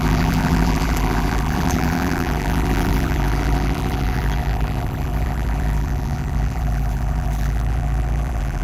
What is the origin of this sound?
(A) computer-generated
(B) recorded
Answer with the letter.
A